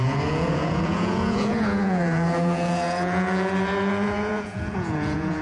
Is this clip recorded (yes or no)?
no